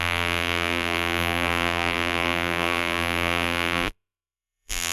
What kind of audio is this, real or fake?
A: fake